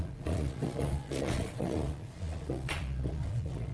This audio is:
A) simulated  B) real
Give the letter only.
A